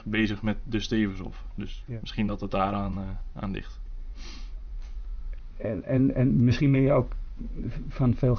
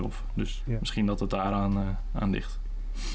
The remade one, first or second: first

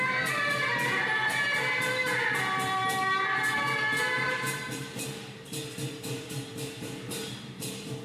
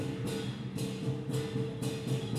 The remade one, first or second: first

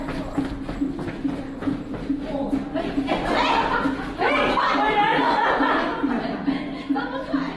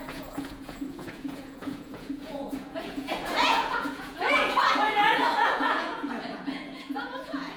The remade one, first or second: second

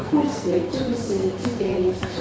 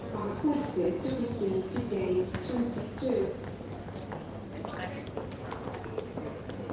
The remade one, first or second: first